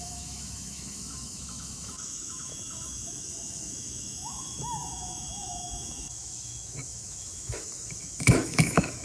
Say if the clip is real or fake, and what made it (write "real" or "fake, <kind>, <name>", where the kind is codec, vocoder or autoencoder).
fake, autoencoder, DAC-VAE